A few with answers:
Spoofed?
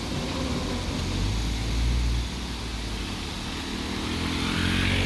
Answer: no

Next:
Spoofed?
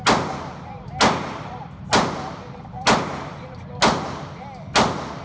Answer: no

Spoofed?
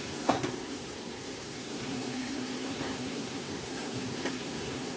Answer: yes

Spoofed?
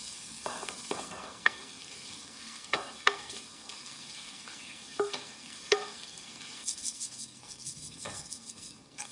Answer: yes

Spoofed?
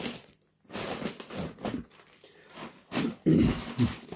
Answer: no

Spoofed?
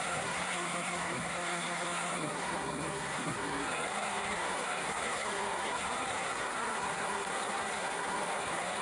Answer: yes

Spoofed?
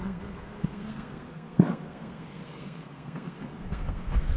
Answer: yes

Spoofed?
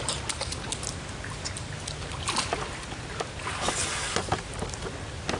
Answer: no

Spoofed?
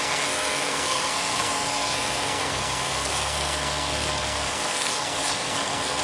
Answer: yes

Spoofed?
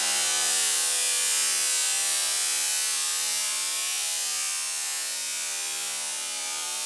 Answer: no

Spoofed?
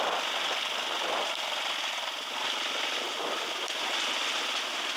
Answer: no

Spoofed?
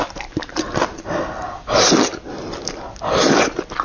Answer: no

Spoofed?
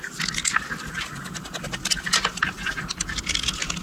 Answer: no